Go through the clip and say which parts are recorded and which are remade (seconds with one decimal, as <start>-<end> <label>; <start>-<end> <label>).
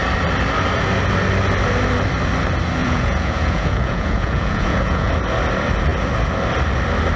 0.0-2.8 recorded; 2.8-5.1 remade; 5.1-7.2 recorded